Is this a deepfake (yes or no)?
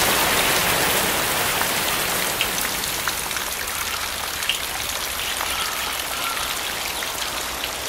no